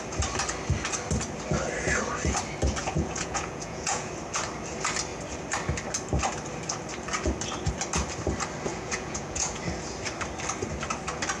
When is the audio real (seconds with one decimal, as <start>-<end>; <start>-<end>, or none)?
0.0-2.8; 4.1-8.7; 9.6-11.4